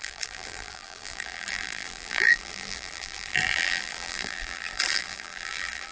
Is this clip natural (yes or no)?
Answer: no